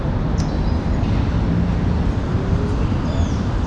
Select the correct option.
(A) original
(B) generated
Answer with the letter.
A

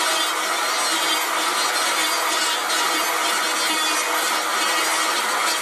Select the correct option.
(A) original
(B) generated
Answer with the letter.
A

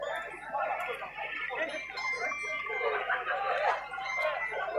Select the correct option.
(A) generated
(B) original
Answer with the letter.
B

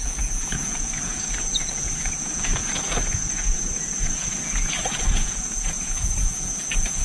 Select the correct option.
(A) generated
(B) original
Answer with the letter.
A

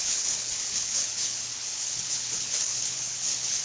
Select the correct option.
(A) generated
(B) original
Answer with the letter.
A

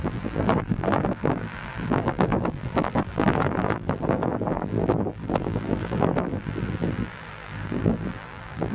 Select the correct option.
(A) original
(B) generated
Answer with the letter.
B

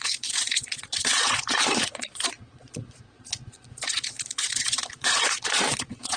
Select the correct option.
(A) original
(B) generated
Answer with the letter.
B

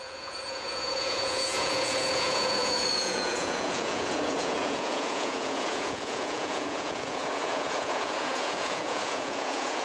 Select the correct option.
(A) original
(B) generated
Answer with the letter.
B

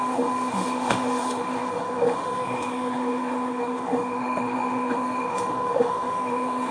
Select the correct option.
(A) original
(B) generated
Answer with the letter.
B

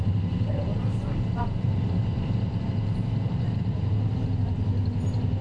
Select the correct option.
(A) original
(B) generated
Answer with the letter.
B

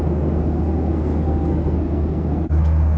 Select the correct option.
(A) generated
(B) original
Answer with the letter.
A